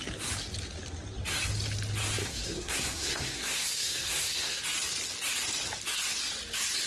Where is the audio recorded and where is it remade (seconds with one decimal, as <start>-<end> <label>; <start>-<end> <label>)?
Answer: 0.0-2.2 recorded; 2.2-4.6 remade; 4.6-6.9 recorded